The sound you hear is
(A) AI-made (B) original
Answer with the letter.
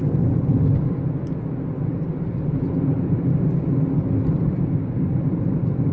B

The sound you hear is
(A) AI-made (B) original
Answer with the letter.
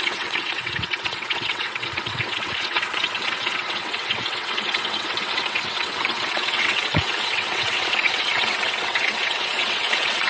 A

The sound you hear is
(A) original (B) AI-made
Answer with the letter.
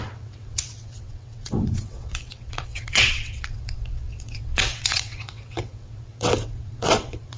B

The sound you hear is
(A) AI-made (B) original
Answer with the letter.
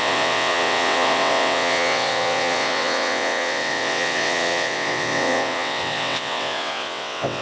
A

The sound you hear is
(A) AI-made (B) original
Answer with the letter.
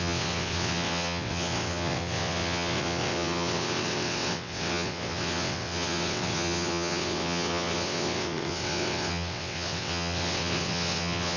A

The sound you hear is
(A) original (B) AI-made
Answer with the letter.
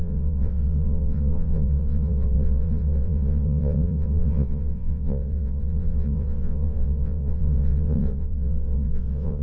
B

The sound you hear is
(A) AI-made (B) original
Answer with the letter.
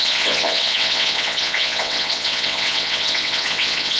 A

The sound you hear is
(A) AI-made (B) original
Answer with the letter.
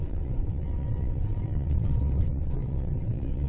A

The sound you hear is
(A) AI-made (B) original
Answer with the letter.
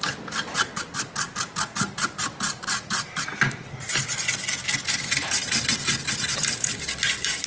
B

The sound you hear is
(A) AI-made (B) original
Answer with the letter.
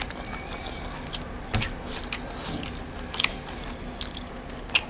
B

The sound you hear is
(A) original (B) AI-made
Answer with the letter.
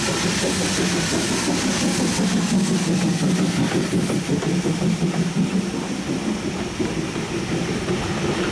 A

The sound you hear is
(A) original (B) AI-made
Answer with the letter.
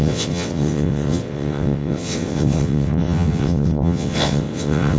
B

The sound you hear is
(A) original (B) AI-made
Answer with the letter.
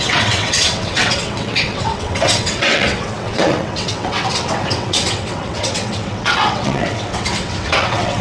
B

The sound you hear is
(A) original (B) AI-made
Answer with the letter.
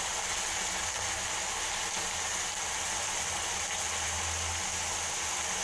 A